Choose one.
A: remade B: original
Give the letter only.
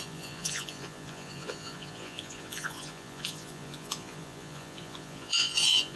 A